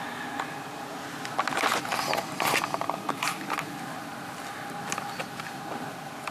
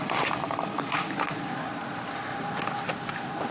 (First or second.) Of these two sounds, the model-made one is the second